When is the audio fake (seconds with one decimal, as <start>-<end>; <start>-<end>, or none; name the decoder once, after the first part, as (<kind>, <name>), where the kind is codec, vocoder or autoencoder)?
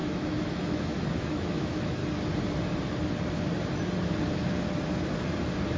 0.0-2.0 (autoencoder, DAC-VAE)